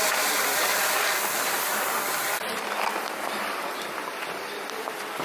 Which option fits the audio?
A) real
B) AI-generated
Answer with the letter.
B